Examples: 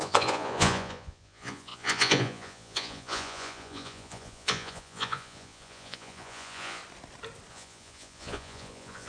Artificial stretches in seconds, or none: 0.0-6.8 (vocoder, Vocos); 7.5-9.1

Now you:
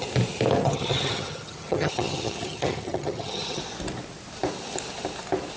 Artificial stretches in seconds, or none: 0.6-3.6 (vocoder, HiFi-GAN)

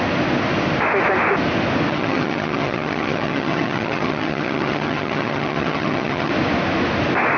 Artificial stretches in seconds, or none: 1.9-6.3 (vocoder, HiFi-GAN)

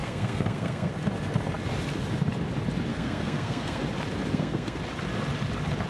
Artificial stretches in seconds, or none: 0.0-0.9 (codec, SNAC); 2.9-3.8; 4.3-4.8

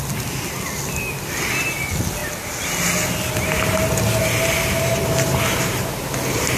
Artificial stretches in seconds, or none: none

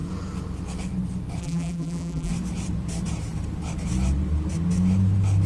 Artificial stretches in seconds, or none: 1.4-2.3 (vocoder, BigVGAN v2)

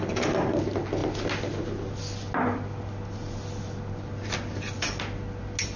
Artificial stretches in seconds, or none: none

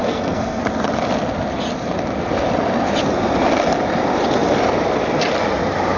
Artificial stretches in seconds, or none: 0.0-0.6 (codec, SNAC)